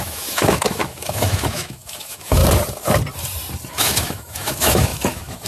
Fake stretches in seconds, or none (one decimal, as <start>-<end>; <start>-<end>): 0.0-2.4; 3.7-5.5